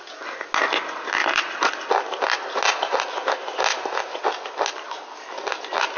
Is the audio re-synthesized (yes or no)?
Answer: no